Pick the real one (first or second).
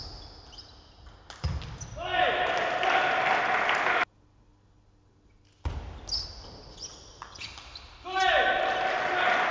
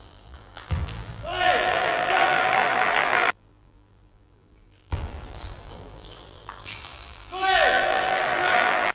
first